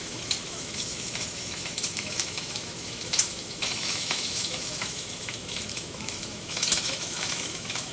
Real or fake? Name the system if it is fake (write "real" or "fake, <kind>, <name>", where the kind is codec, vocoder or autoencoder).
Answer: fake, autoencoder, DAC-VAE